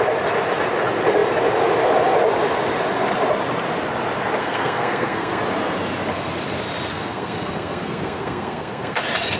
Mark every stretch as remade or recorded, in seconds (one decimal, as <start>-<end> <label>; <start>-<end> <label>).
0.0-4.4 recorded; 4.4-5.4 remade; 5.4-6.9 recorded; 6.9-9.0 remade; 9.0-9.4 recorded